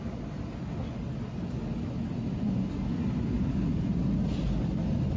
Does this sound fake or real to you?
real